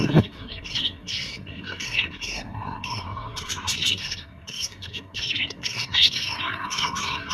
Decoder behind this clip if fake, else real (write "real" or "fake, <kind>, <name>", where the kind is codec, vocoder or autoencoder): fake, codec, SNAC